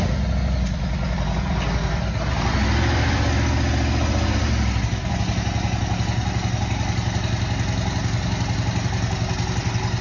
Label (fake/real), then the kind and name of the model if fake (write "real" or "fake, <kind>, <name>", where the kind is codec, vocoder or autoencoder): real